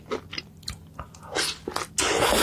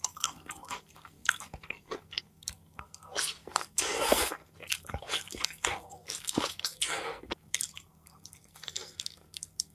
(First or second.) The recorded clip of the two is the first